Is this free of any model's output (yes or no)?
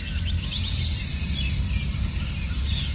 no